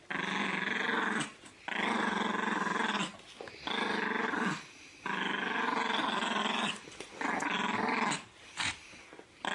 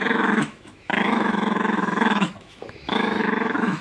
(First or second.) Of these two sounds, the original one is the first